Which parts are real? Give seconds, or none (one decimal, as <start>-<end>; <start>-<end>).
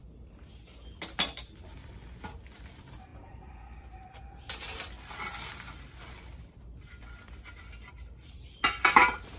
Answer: 0.0-9.4